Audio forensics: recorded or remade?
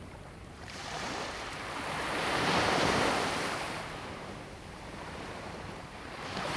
remade